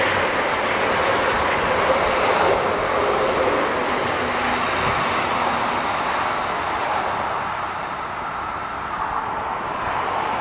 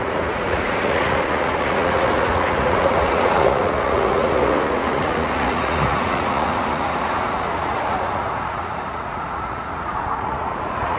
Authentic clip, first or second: first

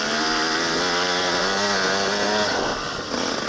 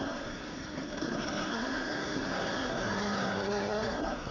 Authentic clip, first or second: first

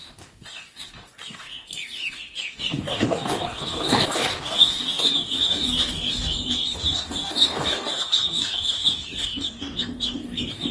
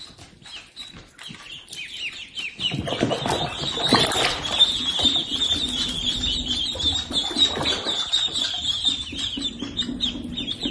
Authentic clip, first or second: second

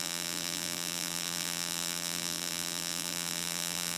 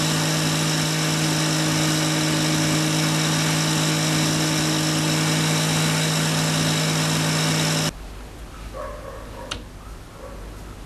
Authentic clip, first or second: second